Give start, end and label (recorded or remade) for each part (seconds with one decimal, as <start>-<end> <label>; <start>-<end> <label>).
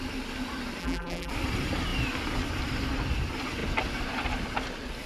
0.0-0.8 recorded; 0.8-1.3 remade; 1.3-5.1 recorded